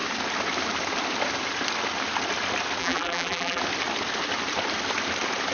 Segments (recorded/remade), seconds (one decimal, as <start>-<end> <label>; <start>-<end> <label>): 0.0-2.8 recorded; 2.8-3.6 remade; 3.6-5.5 recorded